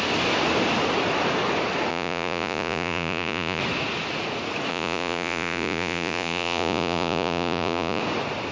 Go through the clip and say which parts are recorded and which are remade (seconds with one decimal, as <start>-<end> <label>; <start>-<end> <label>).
0.0-1.9 recorded; 1.9-3.6 remade; 3.6-4.7 recorded; 4.7-8.0 remade; 8.0-8.5 recorded